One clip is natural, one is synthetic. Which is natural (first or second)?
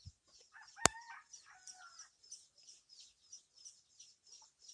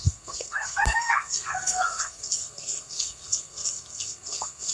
first